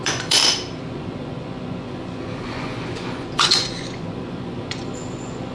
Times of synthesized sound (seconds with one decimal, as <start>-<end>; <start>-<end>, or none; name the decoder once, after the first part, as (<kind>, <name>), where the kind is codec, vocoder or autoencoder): 0.0-0.4 (vocoder, Vocos); 0.9-5.5